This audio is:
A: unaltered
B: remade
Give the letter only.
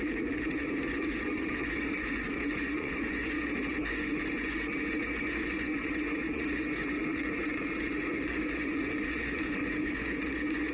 B